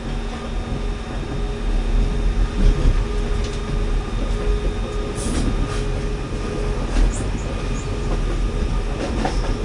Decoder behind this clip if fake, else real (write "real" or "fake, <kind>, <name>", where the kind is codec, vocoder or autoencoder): real